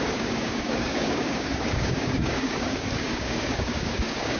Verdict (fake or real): fake